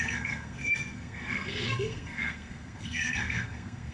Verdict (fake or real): fake